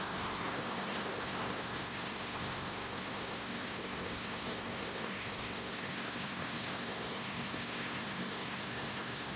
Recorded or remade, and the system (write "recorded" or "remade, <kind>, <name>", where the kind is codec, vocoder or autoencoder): remade, codec, SNAC